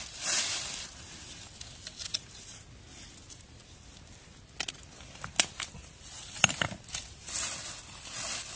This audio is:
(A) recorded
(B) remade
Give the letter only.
A